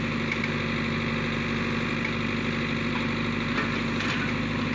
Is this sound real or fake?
real